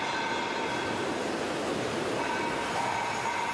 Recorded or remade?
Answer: recorded